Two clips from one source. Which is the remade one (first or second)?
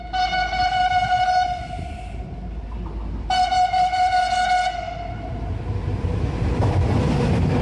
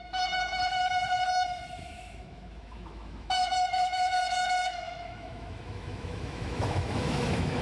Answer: second